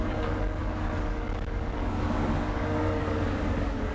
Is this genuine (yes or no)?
no